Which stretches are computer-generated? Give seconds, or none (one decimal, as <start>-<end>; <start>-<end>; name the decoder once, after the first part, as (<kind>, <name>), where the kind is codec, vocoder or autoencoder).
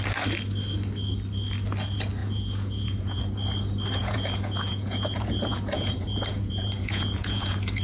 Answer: 2.2-3.2 (vocoder, Vocos); 4.0-7.8